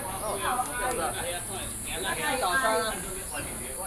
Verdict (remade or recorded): recorded